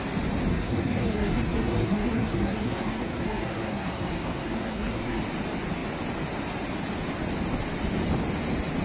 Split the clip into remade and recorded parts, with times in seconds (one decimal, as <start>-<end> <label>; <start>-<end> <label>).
0.0-0.5 recorded; 0.5-5.2 remade; 5.2-8.8 recorded